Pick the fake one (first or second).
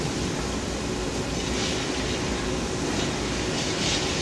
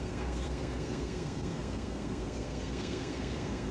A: second